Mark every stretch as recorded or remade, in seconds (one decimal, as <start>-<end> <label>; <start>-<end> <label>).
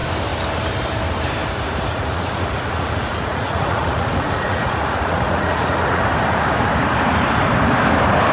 0.0-1.9 recorded; 1.9-6.0 remade; 6.0-8.3 recorded